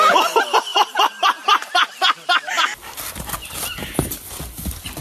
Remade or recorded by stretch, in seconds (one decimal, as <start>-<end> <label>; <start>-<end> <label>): 0.0-5.0 recorded